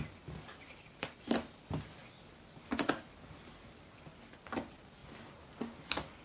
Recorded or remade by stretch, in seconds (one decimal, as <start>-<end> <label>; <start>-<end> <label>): 0.0-6.2 recorded